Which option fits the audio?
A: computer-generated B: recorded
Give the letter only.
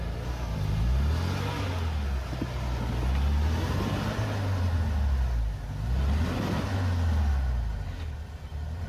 B